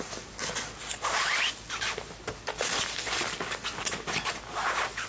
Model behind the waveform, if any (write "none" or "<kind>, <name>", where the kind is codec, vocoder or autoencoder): none